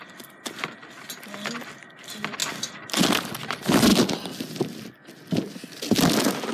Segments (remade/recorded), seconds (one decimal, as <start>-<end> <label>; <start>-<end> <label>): 0.0-6.5 recorded